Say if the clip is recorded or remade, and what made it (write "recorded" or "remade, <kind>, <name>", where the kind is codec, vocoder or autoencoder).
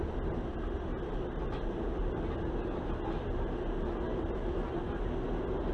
recorded